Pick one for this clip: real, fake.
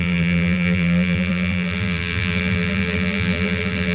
fake